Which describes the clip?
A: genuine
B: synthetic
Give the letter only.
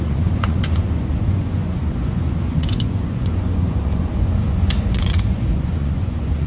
B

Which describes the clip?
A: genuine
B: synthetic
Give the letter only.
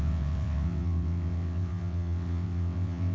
B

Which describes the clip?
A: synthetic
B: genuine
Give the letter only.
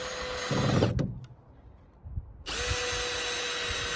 B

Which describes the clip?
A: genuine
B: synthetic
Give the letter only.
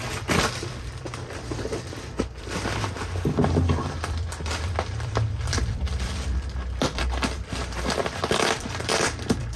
B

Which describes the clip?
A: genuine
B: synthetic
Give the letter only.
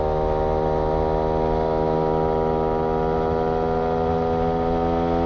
A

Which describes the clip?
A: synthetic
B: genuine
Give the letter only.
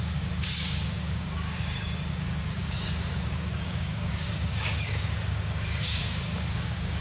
A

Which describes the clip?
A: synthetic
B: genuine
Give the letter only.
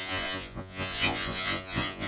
A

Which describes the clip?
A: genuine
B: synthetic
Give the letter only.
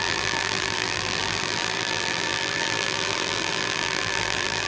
B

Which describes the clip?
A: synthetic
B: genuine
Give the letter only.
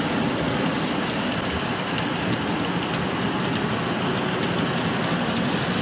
B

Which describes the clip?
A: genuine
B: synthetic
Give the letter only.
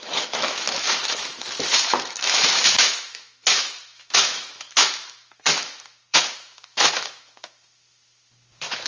B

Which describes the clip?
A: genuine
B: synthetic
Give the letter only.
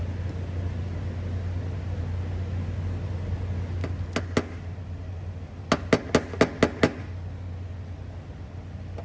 A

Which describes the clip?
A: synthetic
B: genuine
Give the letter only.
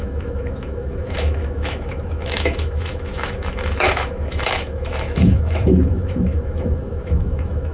A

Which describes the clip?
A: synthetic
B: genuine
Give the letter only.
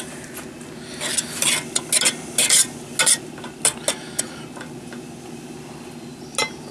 B